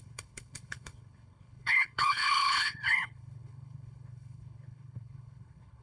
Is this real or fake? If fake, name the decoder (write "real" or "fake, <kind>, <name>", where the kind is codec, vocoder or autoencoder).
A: fake, codec, HILCodec